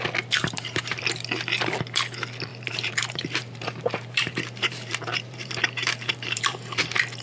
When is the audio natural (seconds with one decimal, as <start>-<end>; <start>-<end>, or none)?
0.0-0.4; 1.0-2.5; 6.8-7.2